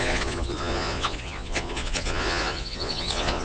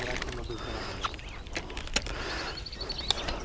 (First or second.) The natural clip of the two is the second